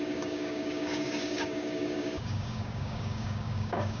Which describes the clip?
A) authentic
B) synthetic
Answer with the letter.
B